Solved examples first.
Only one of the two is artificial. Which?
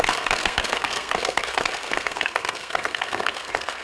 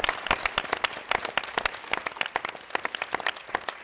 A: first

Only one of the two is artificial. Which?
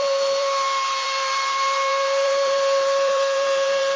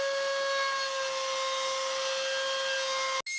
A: first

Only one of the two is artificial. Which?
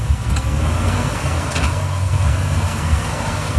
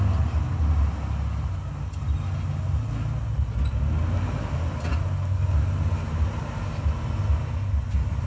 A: first